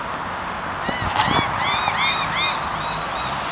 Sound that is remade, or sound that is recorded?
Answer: recorded